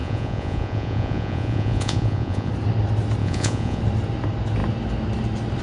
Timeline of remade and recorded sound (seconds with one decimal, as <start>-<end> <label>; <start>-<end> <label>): 0.0-2.5 remade; 2.5-3.2 recorded; 3.2-3.8 remade; 3.8-5.6 recorded